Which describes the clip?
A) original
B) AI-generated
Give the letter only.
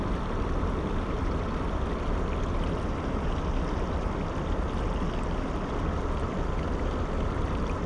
A